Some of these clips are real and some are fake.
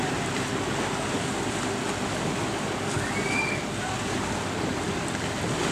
real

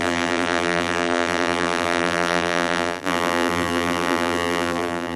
fake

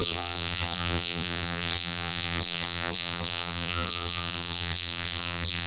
fake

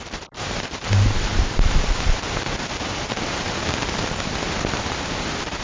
fake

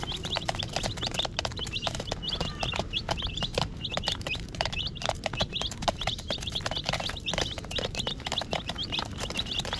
fake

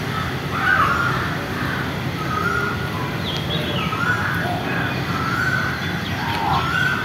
real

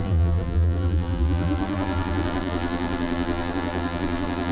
fake